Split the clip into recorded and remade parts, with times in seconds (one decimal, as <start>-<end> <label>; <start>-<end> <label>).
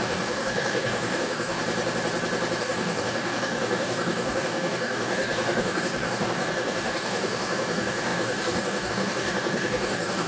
0.0-1.6 remade; 1.6-2.6 recorded; 2.6-10.3 remade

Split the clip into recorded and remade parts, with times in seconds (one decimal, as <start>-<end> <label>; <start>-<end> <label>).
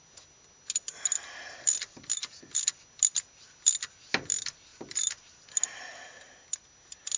0.0-7.2 recorded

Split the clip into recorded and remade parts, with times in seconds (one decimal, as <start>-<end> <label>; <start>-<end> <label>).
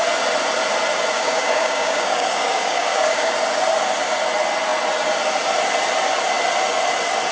0.0-1.1 recorded; 1.1-3.3 remade; 3.3-7.3 recorded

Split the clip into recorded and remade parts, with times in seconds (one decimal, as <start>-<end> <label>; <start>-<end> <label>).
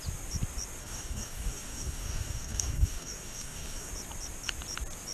0.0-0.8 recorded; 0.8-3.9 remade; 3.9-5.1 recorded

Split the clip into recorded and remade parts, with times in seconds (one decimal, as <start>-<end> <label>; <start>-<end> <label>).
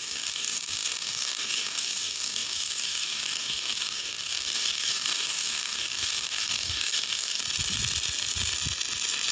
0.0-7.4 remade; 7.4-9.3 recorded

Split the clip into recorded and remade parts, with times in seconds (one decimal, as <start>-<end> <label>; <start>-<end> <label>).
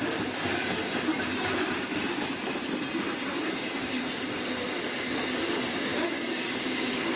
0.0-3.3 recorded; 3.3-4.0 remade; 4.0-5.9 recorded; 5.9-7.2 remade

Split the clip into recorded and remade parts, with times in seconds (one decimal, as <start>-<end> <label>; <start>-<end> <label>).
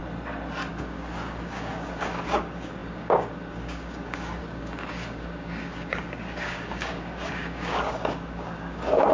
0.0-0.7 recorded; 0.7-9.1 remade